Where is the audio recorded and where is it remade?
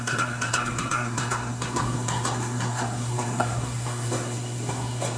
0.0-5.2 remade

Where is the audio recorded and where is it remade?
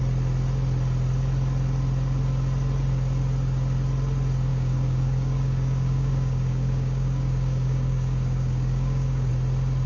0.0-4.5 recorded; 4.5-9.3 remade; 9.3-9.9 recorded